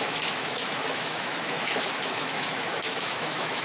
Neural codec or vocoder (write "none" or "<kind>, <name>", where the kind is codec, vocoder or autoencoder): autoencoder, DAC-VAE